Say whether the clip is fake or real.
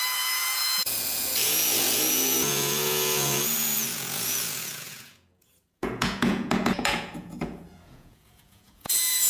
fake